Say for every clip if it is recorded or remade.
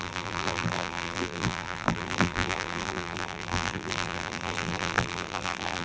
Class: remade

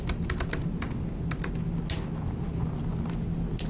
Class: recorded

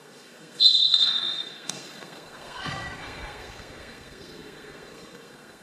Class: remade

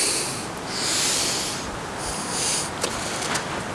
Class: recorded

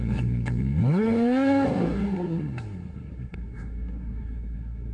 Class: remade